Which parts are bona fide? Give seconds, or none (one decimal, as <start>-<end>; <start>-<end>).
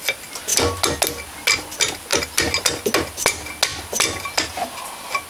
0.0-5.3